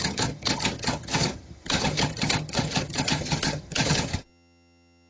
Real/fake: fake